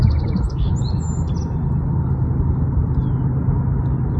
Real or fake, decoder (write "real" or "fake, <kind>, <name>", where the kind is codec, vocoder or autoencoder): real